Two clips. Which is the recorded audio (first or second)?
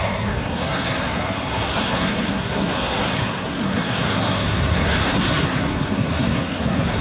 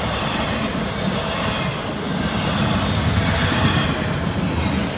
second